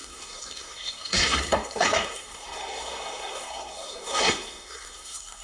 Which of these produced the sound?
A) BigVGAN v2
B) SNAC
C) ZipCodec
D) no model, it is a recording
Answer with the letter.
B